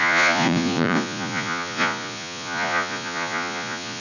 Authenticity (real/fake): fake